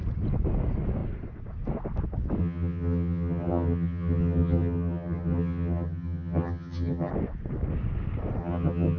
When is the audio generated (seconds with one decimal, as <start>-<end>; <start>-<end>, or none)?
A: 2.4-7.1; 8.4-9.0